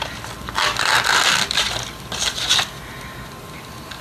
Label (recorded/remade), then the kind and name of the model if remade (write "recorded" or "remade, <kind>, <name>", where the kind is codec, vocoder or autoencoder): recorded